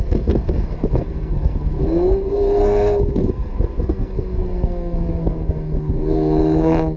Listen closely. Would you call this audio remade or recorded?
remade